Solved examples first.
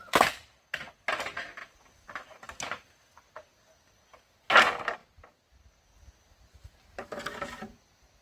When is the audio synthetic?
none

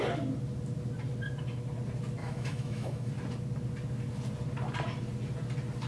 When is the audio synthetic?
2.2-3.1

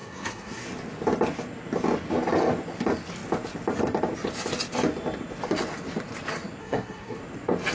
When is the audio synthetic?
0.0-0.6; 6.6-7.2